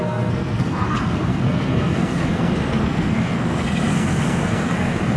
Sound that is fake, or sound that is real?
fake